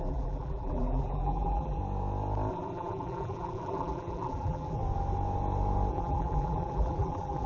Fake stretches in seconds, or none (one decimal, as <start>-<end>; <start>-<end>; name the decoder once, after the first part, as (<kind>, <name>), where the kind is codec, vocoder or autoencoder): 0.0-1.8 (vocoder, BigVGAN v2); 2.5-4.8; 5.9-7.5